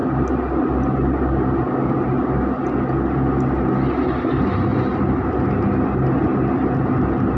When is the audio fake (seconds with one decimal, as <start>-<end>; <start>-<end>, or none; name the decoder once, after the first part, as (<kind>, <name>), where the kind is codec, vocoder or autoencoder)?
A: none